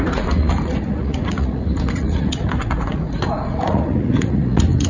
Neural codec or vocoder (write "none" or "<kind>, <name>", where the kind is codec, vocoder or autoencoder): vocoder, Vocos